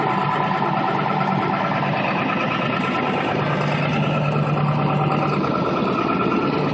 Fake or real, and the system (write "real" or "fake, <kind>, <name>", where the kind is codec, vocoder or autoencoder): real